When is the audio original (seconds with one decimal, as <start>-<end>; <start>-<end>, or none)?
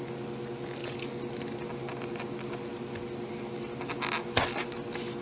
0.0-5.2